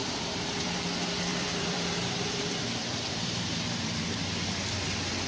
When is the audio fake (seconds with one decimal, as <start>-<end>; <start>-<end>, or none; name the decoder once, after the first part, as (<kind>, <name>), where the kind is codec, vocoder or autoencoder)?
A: 0.0-0.8 (vocoder, BigVGAN v2); 1.3-4.5